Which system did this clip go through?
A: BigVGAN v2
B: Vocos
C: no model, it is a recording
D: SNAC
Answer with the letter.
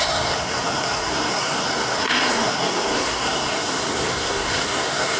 D